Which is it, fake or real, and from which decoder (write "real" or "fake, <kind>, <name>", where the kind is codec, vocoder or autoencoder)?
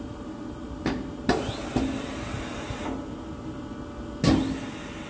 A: real